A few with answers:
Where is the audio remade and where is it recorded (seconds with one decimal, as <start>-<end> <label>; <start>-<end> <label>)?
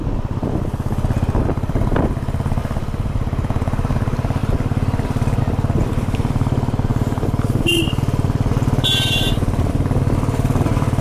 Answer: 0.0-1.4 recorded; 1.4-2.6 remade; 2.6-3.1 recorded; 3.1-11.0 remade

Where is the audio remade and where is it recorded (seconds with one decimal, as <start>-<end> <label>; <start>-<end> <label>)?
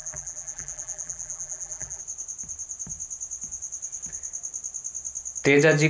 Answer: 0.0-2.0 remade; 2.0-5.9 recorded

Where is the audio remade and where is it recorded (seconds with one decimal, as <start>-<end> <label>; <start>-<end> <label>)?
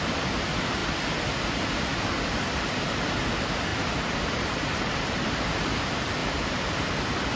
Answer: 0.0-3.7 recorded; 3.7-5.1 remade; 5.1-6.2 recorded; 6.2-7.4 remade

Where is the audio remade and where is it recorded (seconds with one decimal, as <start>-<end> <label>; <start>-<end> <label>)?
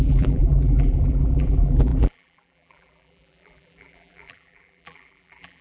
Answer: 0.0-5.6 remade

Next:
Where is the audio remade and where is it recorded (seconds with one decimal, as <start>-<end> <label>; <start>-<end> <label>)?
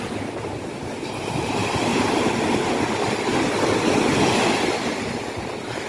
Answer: 0.0-1.6 recorded; 1.6-2.1 remade; 2.1-5.9 recorded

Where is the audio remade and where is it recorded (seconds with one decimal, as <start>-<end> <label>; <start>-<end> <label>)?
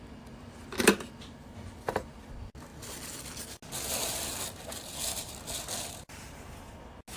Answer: 0.0-7.2 recorded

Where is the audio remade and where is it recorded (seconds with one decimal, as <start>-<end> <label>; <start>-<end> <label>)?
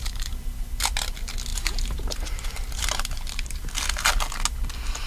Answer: 0.0-0.8 remade; 0.8-1.5 recorded; 1.5-3.7 remade; 3.7-5.1 recorded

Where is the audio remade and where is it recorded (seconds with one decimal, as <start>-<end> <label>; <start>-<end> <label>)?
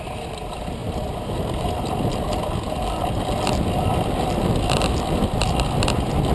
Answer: 0.0-6.3 recorded